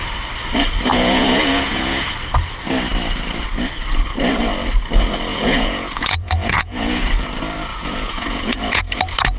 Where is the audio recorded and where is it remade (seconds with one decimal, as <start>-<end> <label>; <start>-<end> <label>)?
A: 0.0-0.9 recorded; 0.9-2.1 remade; 2.1-5.3 recorded; 5.3-7.1 remade; 7.1-7.7 recorded; 7.7-8.8 remade; 8.8-9.4 recorded